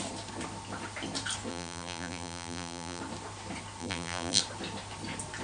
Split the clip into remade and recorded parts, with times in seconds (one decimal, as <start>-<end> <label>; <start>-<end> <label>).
0.0-1.5 recorded; 1.5-3.0 remade; 3.0-3.8 recorded; 3.8-4.4 remade; 4.4-5.4 recorded